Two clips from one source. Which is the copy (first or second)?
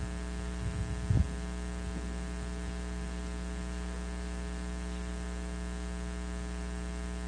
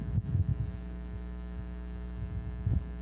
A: second